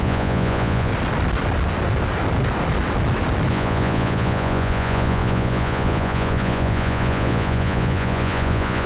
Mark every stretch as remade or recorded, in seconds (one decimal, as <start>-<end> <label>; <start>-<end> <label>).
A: 0.0-0.9 remade; 0.9-3.5 recorded; 3.5-8.9 remade